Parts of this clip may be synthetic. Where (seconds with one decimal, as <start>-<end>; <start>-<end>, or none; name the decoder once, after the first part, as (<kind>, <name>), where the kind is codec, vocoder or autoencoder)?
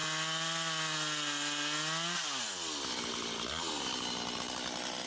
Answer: none